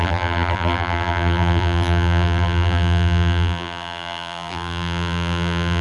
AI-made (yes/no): yes